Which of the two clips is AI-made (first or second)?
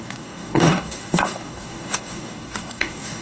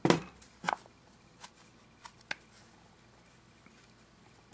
first